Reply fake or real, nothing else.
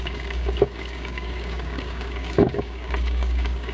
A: fake